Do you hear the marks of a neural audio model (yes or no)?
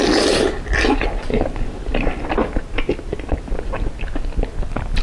no